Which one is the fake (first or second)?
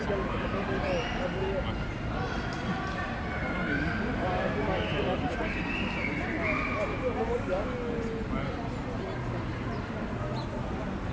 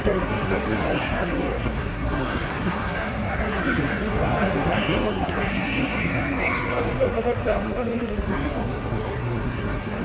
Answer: second